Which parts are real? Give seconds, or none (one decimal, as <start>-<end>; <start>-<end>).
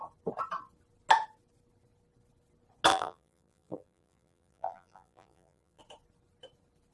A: 0.0-2.9; 5.8-6.9